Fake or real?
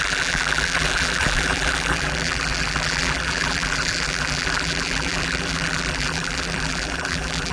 fake